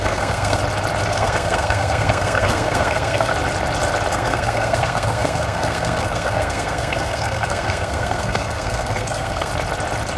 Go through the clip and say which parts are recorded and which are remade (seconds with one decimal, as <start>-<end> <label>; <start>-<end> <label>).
0.0-0.6 remade; 0.6-1.1 recorded; 1.1-3.3 remade; 3.3-4.1 recorded; 4.1-9.5 remade; 9.5-10.2 recorded